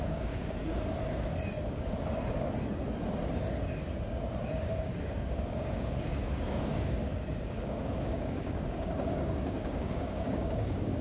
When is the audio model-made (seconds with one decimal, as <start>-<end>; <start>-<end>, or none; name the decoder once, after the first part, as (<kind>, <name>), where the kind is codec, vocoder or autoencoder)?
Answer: 0.0-0.6 (codec, DAC); 4.4-11.0